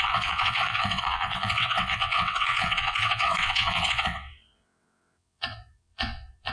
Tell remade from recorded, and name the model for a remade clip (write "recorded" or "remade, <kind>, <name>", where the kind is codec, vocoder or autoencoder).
remade, vocoder, WaveNeXt